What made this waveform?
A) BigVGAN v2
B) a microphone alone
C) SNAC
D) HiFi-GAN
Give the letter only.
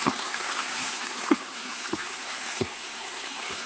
C